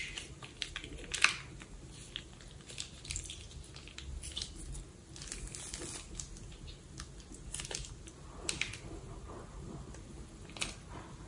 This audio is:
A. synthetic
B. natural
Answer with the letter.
B